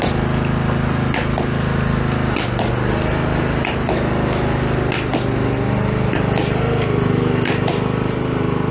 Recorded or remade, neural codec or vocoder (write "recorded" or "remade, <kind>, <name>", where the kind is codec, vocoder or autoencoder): recorded